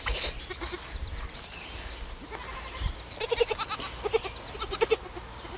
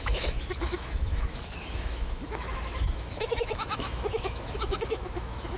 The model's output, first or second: second